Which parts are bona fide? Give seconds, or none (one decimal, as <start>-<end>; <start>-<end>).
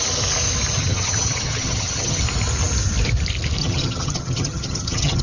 0.0-0.8; 2.2-3.6